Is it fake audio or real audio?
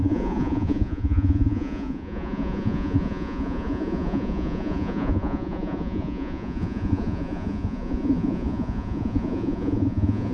fake